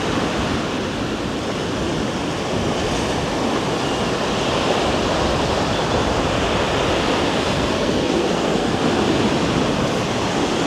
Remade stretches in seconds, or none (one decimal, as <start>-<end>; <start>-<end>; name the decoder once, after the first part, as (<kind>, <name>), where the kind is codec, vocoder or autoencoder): 7.3-8.8 (codec, SNAC)